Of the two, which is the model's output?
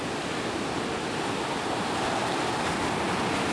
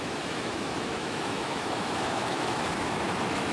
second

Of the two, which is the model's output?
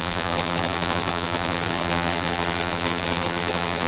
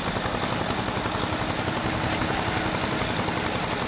first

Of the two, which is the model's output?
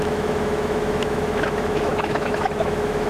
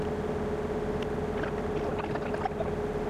first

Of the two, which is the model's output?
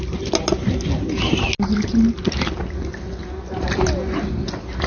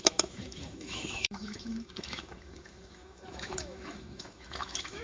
second